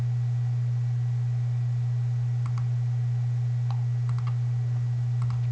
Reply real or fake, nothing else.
real